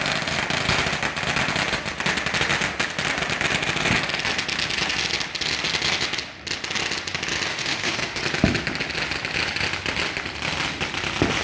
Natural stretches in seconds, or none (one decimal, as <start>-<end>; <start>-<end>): 0.0-7.5; 8.2-11.4